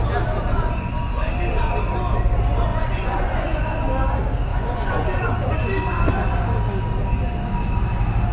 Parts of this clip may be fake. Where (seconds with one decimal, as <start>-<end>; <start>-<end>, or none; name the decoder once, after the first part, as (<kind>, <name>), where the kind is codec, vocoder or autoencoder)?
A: 2.7-3.6 (vocoder, Vocos); 4.5-5.5